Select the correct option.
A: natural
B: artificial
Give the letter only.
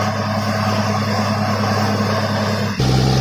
A